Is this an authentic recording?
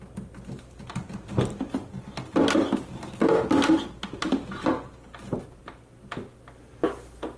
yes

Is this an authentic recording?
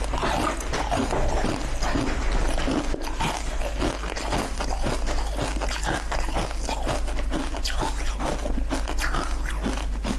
yes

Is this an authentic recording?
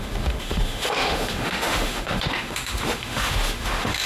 no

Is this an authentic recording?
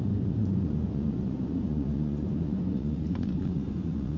no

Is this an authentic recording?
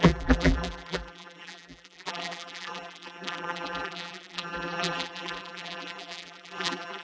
no